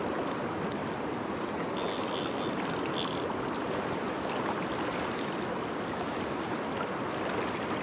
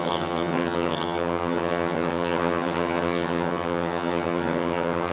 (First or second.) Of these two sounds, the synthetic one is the second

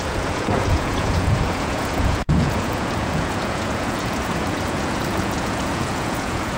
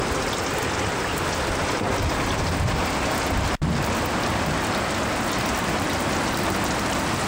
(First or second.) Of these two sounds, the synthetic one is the first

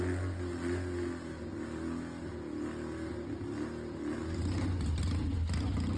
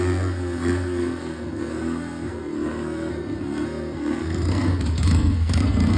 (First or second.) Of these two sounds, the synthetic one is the second